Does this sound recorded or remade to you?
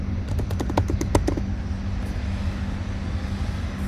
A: recorded